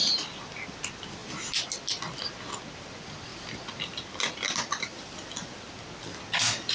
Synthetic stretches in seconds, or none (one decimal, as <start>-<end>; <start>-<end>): none